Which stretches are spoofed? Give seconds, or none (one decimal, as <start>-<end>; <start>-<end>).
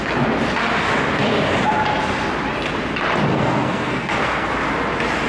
3.3-4.5